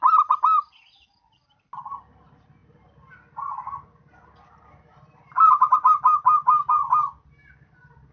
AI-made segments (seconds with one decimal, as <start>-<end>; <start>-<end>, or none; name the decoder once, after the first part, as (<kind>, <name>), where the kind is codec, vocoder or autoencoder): none